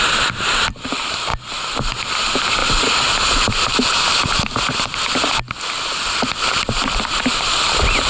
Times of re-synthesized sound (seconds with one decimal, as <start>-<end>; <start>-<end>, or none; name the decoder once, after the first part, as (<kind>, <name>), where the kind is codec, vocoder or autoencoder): none

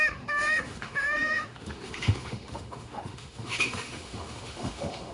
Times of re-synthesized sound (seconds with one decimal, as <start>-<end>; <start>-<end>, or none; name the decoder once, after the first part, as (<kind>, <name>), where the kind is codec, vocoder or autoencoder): 0.0-5.1 (autoencoder, DAC-VAE)